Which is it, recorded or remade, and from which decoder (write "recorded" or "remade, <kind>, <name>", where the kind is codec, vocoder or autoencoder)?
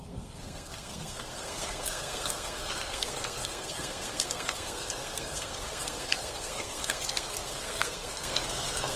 remade, codec, SNAC